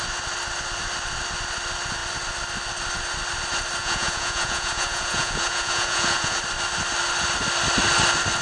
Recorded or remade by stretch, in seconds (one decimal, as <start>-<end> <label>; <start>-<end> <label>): 0.0-3.8 recorded; 3.8-6.4 remade; 6.4-8.4 recorded